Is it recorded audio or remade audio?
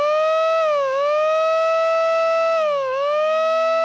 recorded